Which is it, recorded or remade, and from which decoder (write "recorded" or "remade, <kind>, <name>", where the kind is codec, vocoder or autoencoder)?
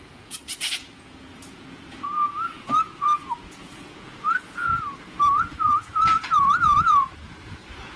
remade, vocoder, Vocos